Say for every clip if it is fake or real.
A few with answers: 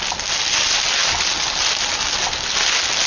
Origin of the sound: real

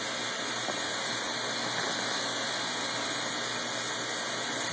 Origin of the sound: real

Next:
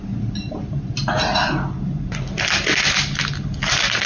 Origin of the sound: real